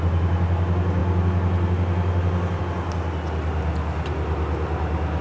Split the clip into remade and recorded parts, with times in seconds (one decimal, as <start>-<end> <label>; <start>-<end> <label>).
0.0-5.2 recorded